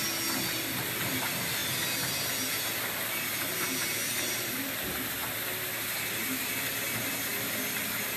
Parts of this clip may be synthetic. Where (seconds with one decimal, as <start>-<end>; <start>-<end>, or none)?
none